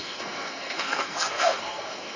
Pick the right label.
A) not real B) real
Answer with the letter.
A